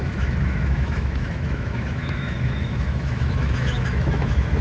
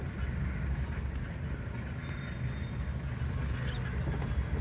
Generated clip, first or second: first